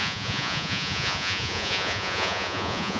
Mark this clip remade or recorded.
remade